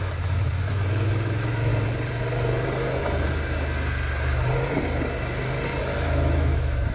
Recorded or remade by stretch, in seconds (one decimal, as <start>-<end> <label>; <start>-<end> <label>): 0.0-1.7 remade; 1.7-5.8 recorded; 5.8-6.9 remade